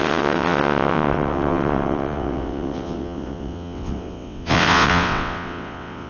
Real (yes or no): no